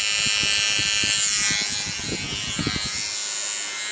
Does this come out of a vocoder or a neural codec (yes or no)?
no